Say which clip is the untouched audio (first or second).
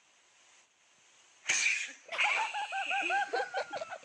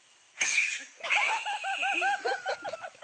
first